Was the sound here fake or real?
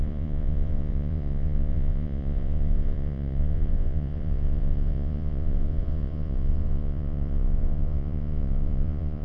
fake